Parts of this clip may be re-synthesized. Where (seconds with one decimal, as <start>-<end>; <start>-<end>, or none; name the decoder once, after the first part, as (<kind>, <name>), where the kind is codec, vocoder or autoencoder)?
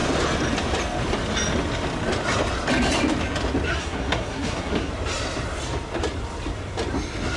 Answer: 3.7-4.9 (codec, SNAC)